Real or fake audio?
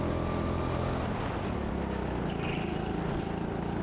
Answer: real